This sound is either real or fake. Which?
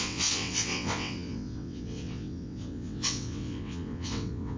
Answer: fake